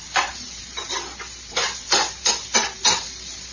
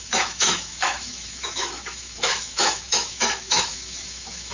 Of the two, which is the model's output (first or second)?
second